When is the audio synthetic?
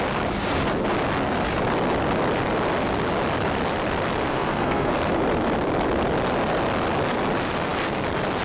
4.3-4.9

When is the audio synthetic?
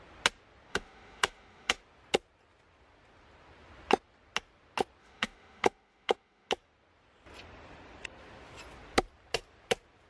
0.7-1.8; 5.0-6.5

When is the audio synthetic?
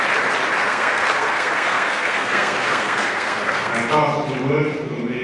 0.6-3.7